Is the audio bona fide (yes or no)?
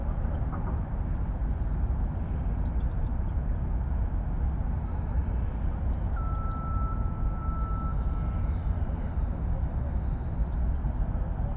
yes